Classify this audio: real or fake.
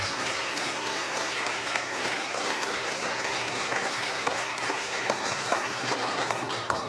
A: fake